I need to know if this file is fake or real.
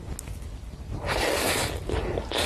real